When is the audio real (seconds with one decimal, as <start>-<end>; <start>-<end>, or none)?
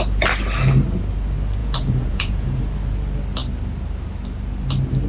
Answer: 0.0-1.6; 2.6-5.1